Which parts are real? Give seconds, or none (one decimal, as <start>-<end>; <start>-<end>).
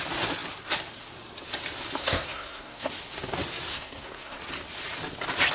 0.0-2.0; 2.9-3.7; 4.4-5.5